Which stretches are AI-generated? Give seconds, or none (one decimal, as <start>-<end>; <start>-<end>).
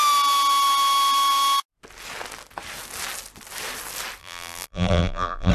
4.2-5.5